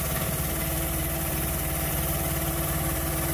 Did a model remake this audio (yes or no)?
yes